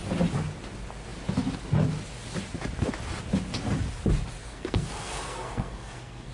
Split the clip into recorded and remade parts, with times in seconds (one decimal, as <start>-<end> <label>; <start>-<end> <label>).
0.0-4.4 recorded; 4.4-6.3 remade